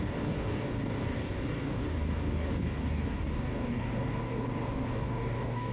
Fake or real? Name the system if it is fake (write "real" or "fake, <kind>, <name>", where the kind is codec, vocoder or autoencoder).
fake, codec, DAC